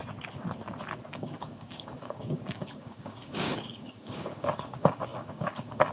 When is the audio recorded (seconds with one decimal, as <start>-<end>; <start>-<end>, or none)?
0.0-1.1

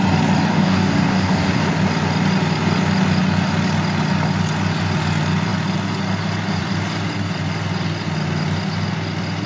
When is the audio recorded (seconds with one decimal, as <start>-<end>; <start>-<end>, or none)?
0.0-0.5; 1.7-9.5

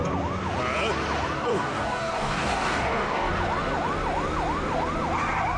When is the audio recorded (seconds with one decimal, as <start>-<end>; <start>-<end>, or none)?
0.0-1.5; 3.3-5.6

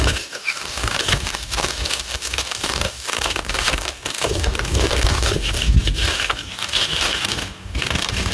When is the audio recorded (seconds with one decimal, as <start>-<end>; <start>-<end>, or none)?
none

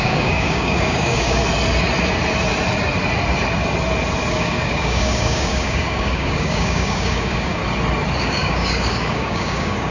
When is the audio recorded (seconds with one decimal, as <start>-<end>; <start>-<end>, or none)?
1.4-4.3; 7.6-8.2